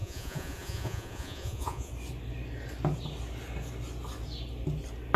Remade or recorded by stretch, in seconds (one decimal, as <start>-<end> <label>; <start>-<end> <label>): 0.0-1.9 remade; 1.9-5.2 recorded